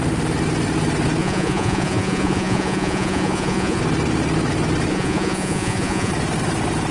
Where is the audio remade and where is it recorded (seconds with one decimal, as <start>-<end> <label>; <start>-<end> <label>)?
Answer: 0.0-1.2 recorded; 1.2-3.8 remade; 3.8-4.9 recorded; 4.9-6.1 remade; 6.1-6.9 recorded